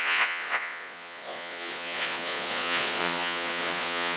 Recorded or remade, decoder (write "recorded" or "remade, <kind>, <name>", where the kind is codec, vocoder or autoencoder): remade, vocoder, Vocos